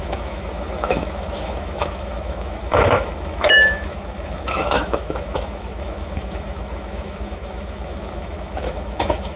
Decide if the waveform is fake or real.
fake